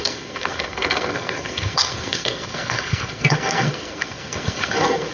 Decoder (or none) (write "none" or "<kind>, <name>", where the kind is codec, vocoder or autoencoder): codec, SNAC